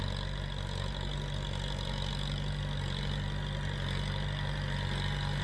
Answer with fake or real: real